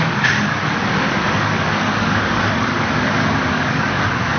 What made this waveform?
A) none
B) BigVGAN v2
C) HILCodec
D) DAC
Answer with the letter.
D